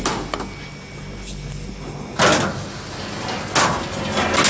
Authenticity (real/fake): real